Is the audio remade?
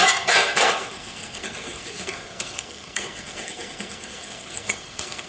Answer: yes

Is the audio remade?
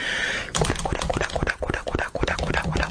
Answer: no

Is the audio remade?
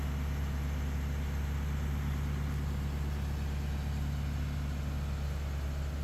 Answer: no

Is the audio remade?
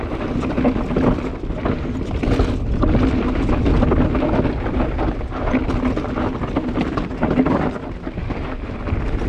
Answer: no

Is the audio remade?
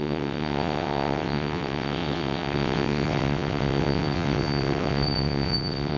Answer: yes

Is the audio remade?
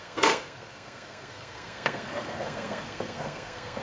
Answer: yes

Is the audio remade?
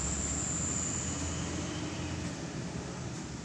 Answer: no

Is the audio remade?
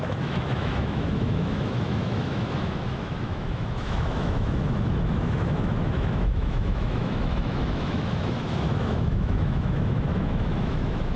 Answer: yes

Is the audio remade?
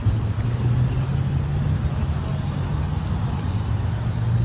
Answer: no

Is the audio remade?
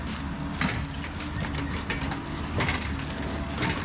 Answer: no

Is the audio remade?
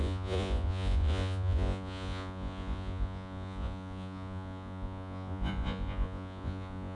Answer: yes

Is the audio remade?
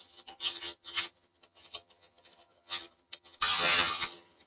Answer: yes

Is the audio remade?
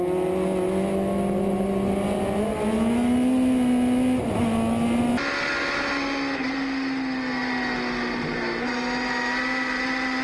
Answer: no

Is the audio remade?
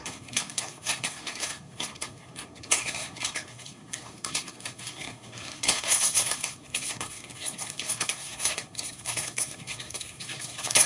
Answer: yes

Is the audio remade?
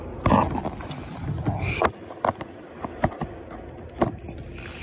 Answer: no